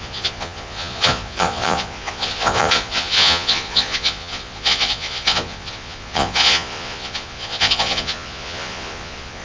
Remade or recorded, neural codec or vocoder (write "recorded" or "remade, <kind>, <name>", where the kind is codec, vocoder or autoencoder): remade, vocoder, Vocos